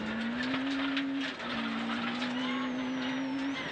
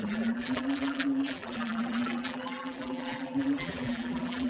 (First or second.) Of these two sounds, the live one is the first